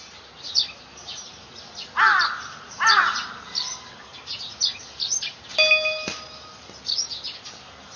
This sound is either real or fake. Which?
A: real